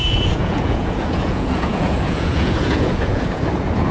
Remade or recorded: remade